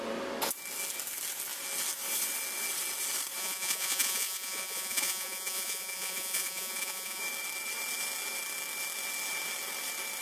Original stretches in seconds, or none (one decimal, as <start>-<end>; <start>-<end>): 0.0-3.4; 7.2-10.2